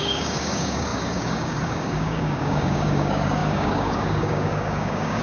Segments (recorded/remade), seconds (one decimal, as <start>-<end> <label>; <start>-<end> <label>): 0.0-5.2 remade